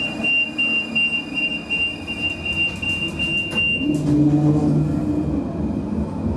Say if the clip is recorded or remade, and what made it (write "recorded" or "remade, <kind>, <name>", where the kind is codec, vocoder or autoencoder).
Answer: recorded